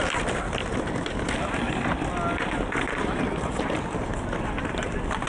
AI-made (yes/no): no